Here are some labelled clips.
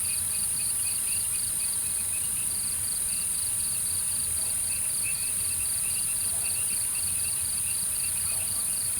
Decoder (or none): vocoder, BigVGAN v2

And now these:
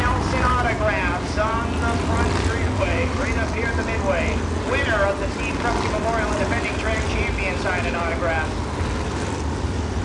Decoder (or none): none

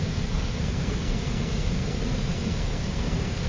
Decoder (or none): codec, SNAC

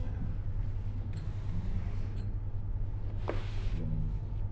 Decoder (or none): none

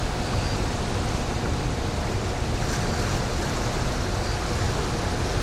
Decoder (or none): none